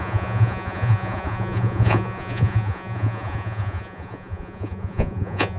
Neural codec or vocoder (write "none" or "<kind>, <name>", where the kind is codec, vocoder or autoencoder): vocoder, Vocos